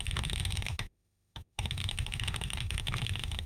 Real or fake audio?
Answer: fake